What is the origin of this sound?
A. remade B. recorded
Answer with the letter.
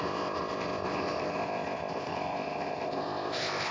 A